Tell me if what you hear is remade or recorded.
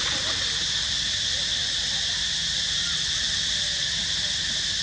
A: recorded